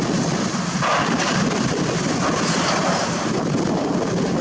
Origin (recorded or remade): recorded